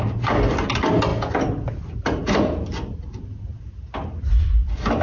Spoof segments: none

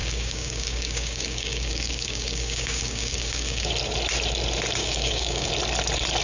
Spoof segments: 0.0-3.7 (codec, DAC); 4.8-5.5

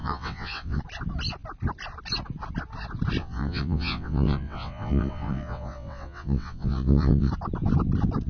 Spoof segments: 0.0-0.8 (vocoder, WaveNeXt); 3.2-7.3

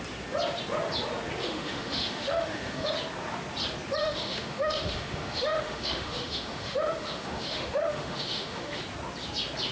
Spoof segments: 1.4-2.9 (autoencoder, DAC-VAE); 4.0-8.8

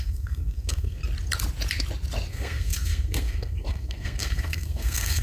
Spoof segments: 0.0-1.0 (codec, SNAC); 2.3-5.2

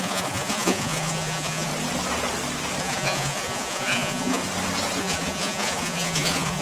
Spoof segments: 0.0-1.7 (vocoder, Vocos); 2.8-4.4; 5.0-6.6